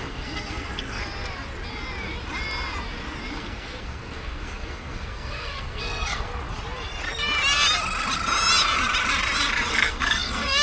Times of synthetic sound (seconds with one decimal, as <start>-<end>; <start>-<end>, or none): 0.0-1.0; 3.3-6.3; 9.7-10.6

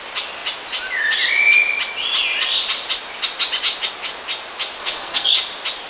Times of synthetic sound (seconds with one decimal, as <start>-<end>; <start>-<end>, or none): 4.8-5.3

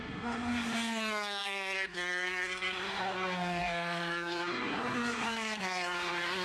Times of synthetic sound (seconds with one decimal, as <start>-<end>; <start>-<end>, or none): 0.0-6.4